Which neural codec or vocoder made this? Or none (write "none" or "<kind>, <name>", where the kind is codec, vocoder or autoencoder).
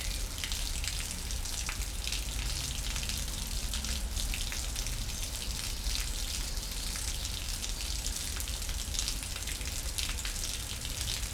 none